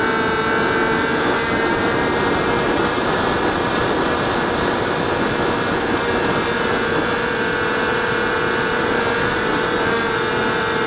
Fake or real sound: real